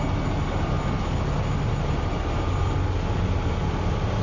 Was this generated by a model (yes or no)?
no